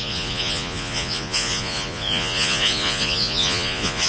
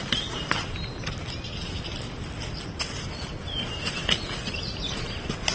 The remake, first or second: first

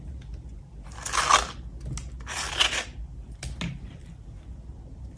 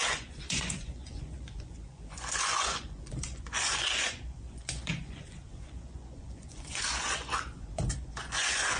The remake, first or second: second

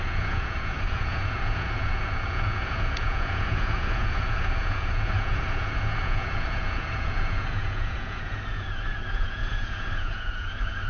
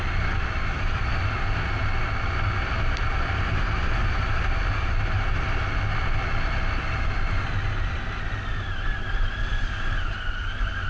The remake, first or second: first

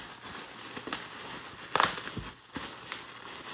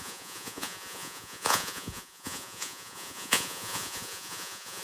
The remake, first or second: second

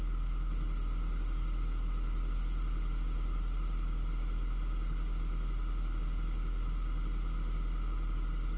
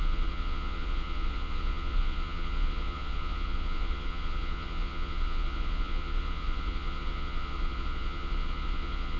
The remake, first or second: second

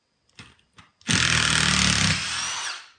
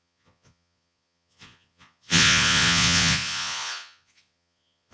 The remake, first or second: second